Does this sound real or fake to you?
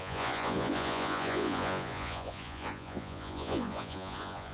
fake